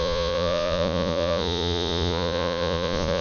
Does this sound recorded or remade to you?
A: remade